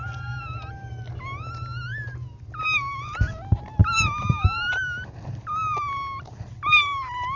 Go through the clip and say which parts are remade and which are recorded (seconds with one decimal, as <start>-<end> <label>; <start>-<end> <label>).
0.0-7.4 recorded